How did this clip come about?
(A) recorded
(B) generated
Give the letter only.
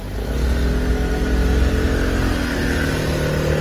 A